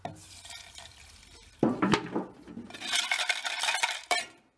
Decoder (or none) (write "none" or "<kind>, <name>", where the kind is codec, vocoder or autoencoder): none